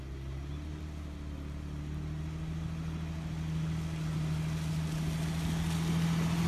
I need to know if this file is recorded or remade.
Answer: recorded